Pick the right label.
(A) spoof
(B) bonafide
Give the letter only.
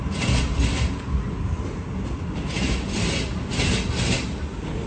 B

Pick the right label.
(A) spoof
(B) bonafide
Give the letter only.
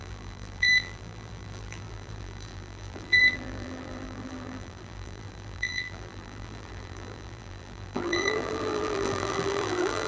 A